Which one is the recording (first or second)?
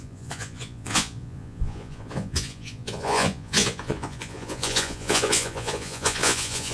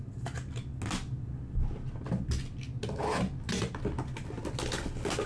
second